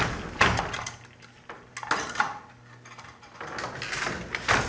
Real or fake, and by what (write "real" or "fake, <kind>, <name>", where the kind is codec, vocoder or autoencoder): real